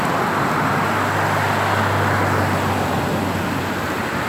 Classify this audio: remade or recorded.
recorded